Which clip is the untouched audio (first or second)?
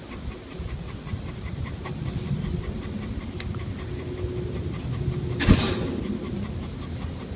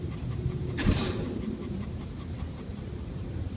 first